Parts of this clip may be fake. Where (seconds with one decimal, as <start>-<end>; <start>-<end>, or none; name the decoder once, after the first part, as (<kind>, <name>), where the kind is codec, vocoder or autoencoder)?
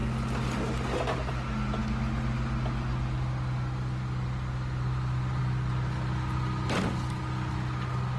none